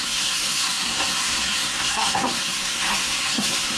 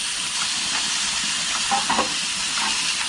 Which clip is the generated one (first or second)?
first